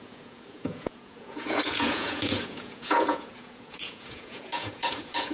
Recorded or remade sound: remade